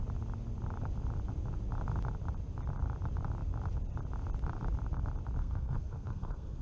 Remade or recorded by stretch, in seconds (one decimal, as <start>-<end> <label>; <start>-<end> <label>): 0.0-5.4 recorded; 5.4-6.6 remade